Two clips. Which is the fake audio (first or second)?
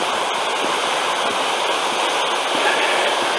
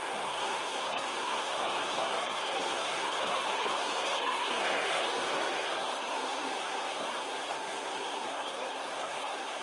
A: second